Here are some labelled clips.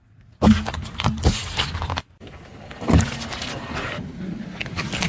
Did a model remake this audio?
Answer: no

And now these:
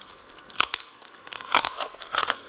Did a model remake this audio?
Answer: yes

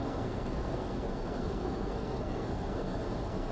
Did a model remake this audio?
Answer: yes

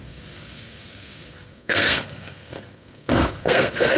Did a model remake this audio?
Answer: yes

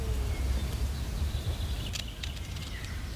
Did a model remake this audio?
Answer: no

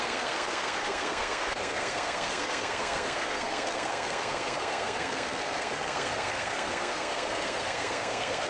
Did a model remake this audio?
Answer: yes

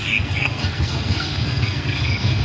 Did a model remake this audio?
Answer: yes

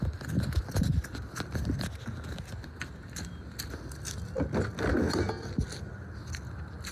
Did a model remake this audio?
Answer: no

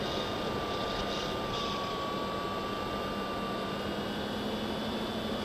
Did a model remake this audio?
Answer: no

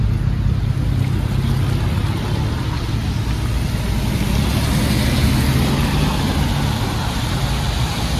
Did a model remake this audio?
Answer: no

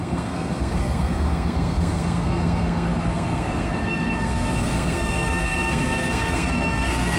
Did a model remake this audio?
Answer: yes